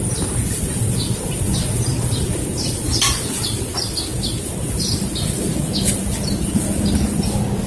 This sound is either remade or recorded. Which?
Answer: recorded